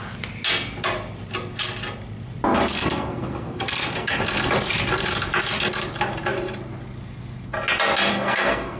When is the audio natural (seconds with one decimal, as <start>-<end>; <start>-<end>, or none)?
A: 0.0-2.7; 4.2-8.1